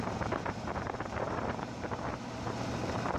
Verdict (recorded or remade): remade